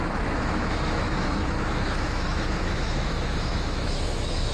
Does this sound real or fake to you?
fake